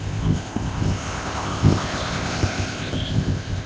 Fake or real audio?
fake